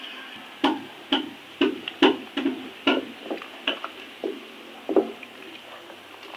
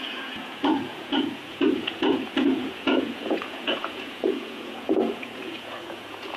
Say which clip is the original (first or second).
first